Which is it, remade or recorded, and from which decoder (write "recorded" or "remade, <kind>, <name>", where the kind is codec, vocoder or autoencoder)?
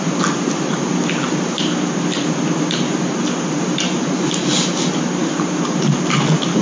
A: recorded